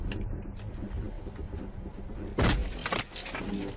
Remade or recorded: recorded